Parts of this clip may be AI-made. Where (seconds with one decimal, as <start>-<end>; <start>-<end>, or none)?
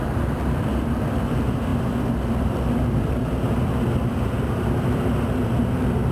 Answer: none